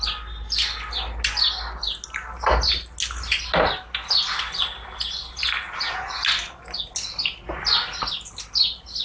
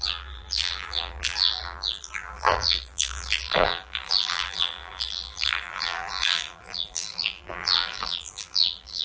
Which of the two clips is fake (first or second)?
second